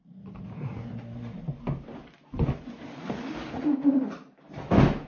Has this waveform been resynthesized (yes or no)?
no